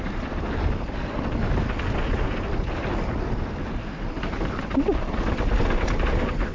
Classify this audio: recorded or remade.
recorded